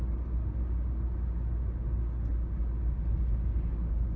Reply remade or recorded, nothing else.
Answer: recorded